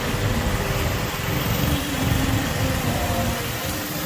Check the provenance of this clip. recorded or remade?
recorded